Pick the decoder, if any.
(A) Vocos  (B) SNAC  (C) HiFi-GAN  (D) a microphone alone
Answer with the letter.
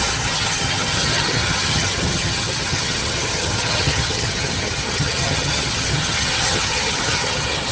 C